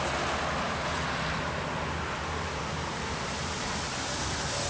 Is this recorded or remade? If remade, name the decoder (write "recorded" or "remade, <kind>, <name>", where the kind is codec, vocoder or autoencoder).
recorded